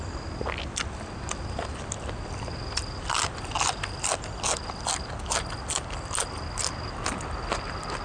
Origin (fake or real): real